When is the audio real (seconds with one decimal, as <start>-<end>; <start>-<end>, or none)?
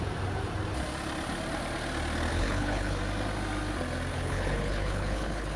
0.0-2.3; 3.0-4.1